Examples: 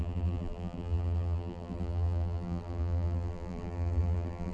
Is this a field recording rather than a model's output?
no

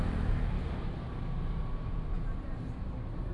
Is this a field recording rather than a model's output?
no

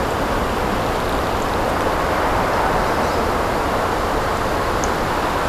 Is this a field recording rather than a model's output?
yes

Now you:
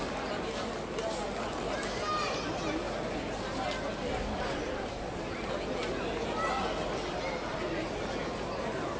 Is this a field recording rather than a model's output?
yes